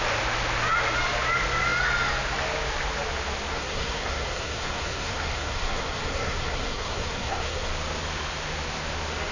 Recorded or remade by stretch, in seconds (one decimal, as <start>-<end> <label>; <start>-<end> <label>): 0.0-3.5 recorded; 3.5-7.7 remade; 7.7-9.3 recorded